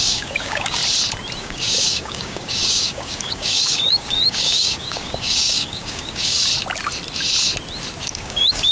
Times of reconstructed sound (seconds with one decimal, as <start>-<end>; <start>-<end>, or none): 0.0-0.8; 1.4-6.5; 8.0-8.7